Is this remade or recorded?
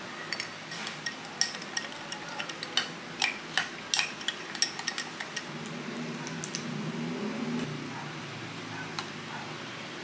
recorded